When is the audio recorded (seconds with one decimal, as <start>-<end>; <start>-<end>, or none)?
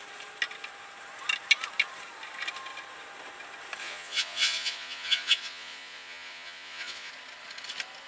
0.0-3.8; 7.1-8.1